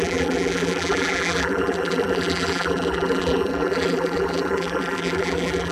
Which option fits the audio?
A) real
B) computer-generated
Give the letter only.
B